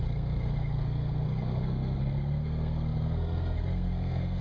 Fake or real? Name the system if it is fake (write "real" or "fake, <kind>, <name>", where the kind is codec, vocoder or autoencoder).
fake, codec, SNAC